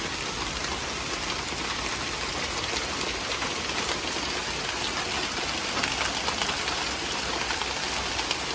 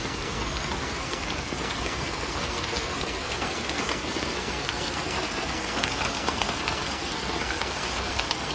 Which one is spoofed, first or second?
second